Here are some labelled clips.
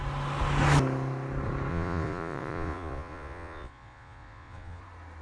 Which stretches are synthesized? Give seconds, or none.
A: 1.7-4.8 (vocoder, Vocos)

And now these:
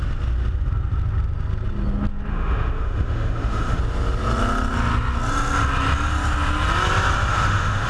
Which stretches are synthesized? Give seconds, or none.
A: 2.3-3.8 (autoencoder, DAC-VAE); 7.3-7.9